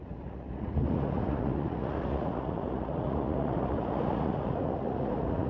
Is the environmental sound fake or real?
fake